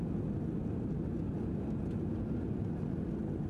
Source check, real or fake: real